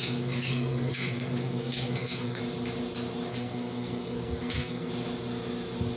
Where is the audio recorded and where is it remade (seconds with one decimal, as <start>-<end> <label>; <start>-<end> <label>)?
0.0-2.4 remade; 2.4-3.3 recorded; 3.3-4.9 remade; 4.9-6.0 recorded